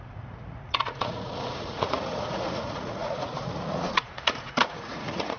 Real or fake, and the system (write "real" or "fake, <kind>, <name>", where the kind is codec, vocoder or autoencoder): fake, vocoder, Vocos